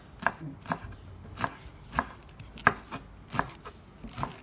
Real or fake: real